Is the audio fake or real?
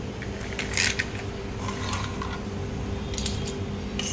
real